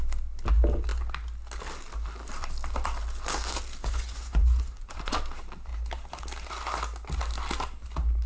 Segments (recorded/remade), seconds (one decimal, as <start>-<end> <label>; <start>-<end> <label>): 0.0-3.8 recorded; 3.8-5.2 remade; 5.2-8.3 recorded